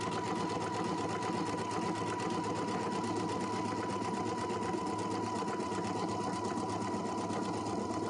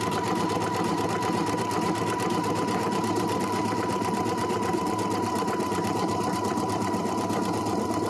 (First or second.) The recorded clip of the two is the first